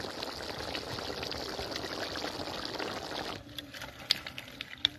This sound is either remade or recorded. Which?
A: recorded